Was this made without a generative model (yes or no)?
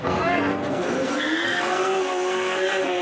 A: no